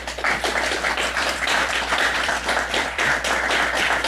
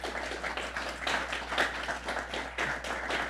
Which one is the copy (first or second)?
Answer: first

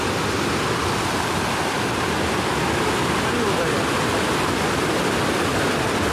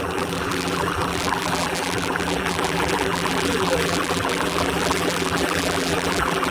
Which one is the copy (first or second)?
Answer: second